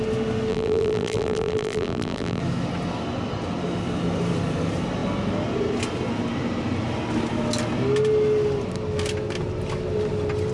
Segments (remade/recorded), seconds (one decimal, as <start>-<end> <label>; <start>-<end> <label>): 0.0-0.5 recorded; 0.5-2.4 remade; 2.4-10.5 recorded